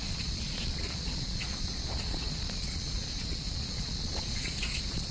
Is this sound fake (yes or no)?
yes